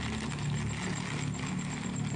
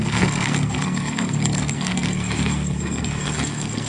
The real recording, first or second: first